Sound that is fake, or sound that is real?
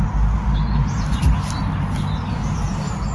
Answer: real